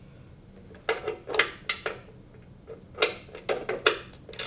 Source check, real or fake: real